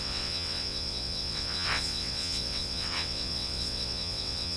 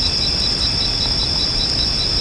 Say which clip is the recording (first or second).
second